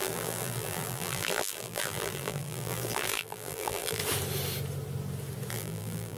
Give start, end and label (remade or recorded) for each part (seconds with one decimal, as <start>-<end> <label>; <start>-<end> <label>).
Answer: 0.0-4.0 remade; 4.0-5.5 recorded; 5.5-6.2 remade